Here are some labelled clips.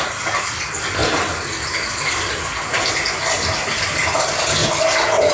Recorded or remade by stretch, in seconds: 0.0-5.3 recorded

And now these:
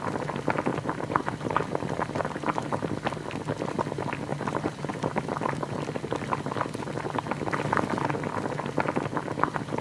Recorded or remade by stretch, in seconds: 0.0-0.7 recorded; 0.7-2.9 remade; 2.9-4.3 recorded; 4.3-5.2 remade; 5.2-9.8 recorded

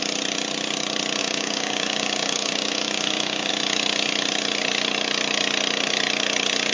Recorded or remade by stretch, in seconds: 0.0-1.2 recorded; 1.2-3.5 remade; 3.5-6.7 recorded